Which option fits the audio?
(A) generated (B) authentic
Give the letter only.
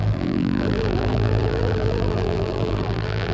A